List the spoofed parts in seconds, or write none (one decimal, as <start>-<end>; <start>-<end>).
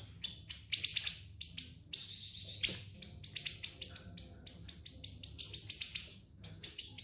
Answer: 6.1-7.0